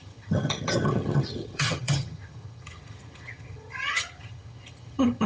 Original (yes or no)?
no